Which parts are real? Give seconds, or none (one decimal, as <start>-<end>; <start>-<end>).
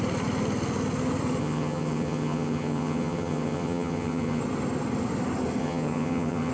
0.0-1.4; 4.4-5.6